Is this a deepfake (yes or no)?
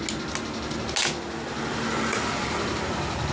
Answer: no